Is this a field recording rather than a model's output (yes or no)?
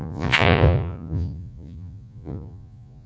no